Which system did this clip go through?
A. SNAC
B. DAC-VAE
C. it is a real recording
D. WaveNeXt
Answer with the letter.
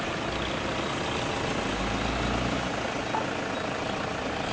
C